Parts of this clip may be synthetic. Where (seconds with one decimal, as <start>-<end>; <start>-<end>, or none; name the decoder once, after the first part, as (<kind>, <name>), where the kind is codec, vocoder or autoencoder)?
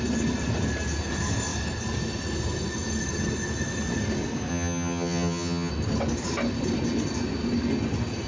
4.5-5.7 (vocoder, HiFi-GAN)